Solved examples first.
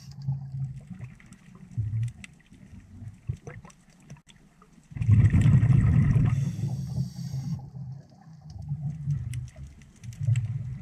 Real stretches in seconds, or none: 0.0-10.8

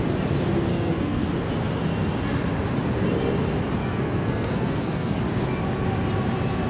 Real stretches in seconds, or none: 0.0-0.7; 1.3-3.8; 5.2-6.7

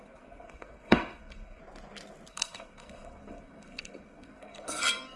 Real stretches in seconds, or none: 1.6-2.3